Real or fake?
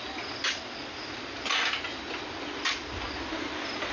real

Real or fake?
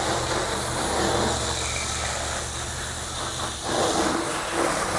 real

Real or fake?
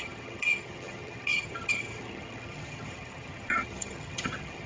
fake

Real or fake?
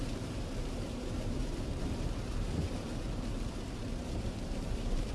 fake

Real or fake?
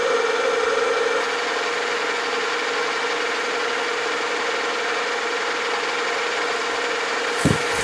real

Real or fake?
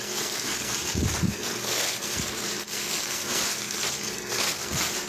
fake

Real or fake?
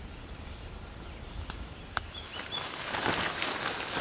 real